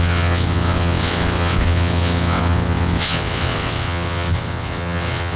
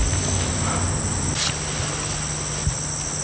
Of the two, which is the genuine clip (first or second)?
second